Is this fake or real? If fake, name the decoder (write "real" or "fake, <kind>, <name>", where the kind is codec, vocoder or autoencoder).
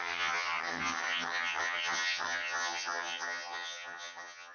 fake, vocoder, HiFi-GAN